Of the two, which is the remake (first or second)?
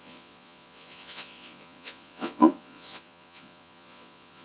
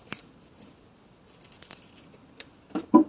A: first